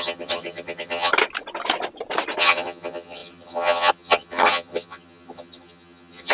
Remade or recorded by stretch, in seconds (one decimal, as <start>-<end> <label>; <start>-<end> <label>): 0.0-1.1 remade; 1.1-2.4 recorded; 2.4-6.3 remade